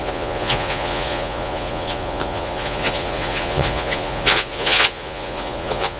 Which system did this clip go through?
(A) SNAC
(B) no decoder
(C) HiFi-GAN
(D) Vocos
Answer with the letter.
D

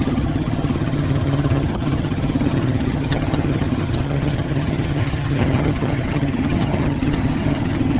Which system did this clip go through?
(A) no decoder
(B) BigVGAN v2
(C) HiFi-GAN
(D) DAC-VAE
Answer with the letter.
C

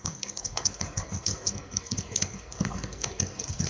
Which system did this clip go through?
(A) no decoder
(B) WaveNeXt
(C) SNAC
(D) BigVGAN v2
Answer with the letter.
C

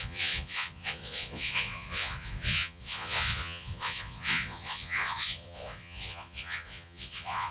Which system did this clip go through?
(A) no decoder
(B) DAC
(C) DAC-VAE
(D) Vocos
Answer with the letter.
D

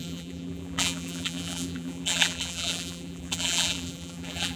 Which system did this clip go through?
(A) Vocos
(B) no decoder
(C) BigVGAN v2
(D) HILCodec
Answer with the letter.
C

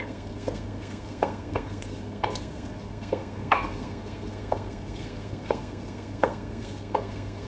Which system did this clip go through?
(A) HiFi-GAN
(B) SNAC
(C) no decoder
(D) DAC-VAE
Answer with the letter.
B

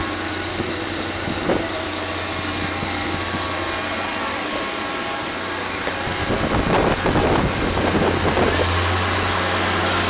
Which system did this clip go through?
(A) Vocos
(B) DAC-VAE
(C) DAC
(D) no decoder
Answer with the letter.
D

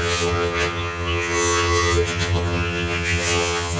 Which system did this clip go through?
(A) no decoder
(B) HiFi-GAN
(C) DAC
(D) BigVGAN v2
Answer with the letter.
B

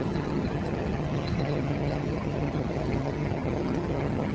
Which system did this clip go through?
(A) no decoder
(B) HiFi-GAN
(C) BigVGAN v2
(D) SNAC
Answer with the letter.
B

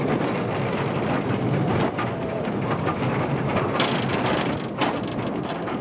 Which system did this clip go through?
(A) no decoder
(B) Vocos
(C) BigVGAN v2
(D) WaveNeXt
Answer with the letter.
A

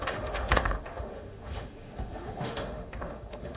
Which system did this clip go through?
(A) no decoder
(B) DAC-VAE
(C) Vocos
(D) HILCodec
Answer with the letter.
B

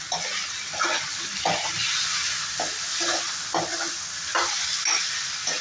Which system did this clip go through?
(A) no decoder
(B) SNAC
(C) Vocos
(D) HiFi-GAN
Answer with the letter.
A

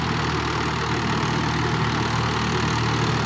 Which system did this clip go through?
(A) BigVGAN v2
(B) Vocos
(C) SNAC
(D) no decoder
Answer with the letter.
D